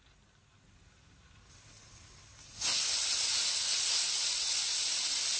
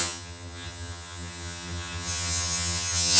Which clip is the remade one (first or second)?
second